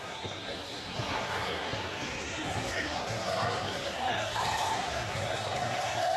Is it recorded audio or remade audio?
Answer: remade